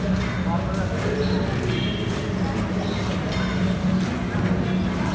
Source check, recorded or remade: recorded